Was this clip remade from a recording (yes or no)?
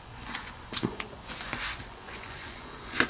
yes